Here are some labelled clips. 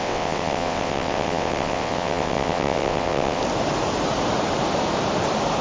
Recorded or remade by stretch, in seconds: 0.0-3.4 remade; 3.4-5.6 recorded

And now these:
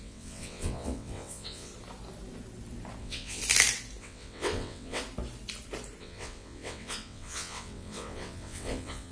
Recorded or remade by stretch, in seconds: 0.0-1.7 remade; 1.7-3.0 recorded; 3.0-3.4 remade; 3.4-4.0 recorded; 4.0-5.0 remade; 5.0-6.0 recorded; 6.0-9.1 remade

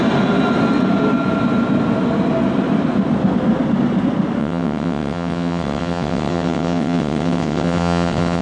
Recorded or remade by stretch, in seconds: 0.0-4.4 recorded; 4.4-8.4 remade

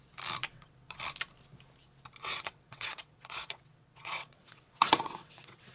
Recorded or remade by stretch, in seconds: 0.0-0.5 recorded; 0.5-1.0 remade; 1.0-2.2 recorded; 2.2-5.7 remade

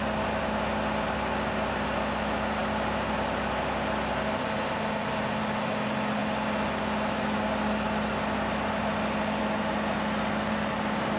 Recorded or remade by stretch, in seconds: 0.0-11.2 recorded